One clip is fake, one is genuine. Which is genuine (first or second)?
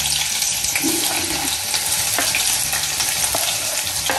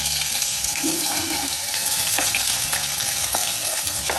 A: first